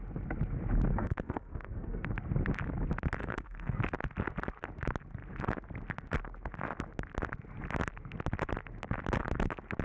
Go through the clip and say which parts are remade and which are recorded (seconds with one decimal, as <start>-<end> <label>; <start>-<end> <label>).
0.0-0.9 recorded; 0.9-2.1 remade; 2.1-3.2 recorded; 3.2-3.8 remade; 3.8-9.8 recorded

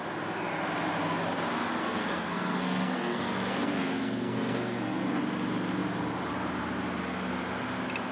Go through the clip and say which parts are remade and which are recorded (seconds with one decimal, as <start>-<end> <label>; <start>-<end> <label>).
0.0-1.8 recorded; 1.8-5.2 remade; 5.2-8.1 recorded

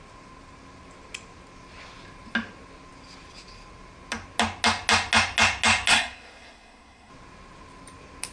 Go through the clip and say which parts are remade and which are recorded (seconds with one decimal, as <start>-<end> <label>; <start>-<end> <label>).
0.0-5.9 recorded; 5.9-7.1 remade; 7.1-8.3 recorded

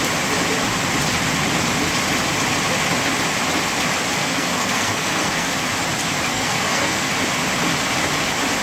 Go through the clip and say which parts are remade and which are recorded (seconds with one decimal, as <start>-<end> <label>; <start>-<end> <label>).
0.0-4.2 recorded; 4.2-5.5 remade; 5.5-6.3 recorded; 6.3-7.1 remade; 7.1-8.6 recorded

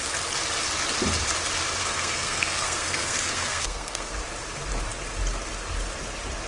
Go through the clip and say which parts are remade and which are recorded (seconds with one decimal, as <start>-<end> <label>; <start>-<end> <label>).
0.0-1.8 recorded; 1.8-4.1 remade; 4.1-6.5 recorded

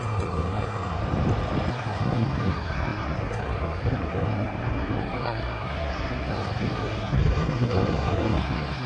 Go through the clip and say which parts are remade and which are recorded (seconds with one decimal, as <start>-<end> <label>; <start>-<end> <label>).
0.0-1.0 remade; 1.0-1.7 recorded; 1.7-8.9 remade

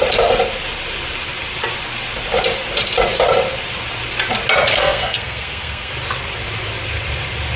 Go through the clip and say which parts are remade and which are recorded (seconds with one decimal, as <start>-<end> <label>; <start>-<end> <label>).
0.0-4.7 recorded; 4.7-5.9 remade; 5.9-7.6 recorded

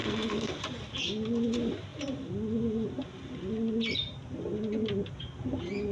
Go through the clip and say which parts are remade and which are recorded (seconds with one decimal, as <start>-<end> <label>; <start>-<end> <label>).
0.0-0.6 remade; 0.6-5.9 recorded